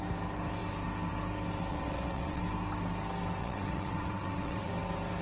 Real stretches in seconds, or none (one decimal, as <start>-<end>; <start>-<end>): 0.0-1.7; 2.4-3.4; 4.7-5.2